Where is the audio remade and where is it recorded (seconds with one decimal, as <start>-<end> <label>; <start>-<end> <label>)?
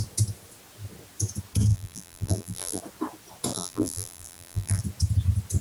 0.0-1.7 recorded; 1.7-2.8 remade; 2.8-3.5 recorded; 3.5-4.8 remade; 4.8-5.6 recorded